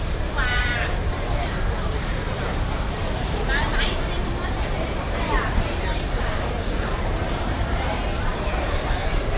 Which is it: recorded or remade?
remade